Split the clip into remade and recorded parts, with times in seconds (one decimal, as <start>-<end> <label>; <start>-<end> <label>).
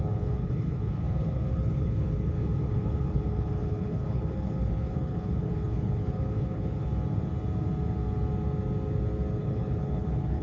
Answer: 0.0-6.9 remade; 6.9-9.4 recorded; 9.4-10.4 remade